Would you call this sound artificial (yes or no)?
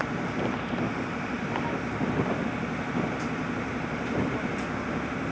no